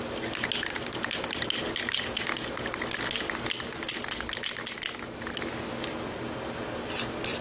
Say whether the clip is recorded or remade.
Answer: recorded